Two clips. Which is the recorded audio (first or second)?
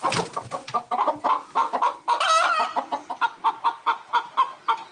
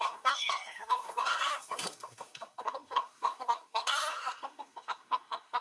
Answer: first